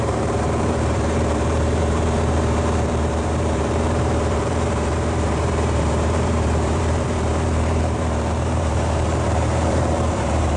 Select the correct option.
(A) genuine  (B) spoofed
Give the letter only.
B